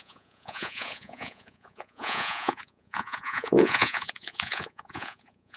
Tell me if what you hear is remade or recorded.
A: remade